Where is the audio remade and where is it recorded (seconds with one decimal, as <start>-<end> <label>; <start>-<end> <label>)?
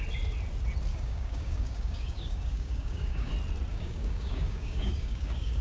0.0-0.9 recorded; 0.9-3.3 remade; 3.3-3.7 recorded; 3.7-5.6 remade